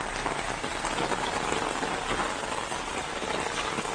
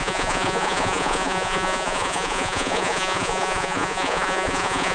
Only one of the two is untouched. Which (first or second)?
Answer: first